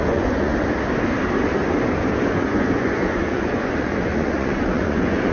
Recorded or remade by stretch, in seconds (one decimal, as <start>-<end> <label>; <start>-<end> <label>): 0.0-0.5 remade; 0.5-2.2 recorded; 2.2-5.3 remade